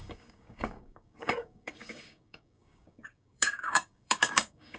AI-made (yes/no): yes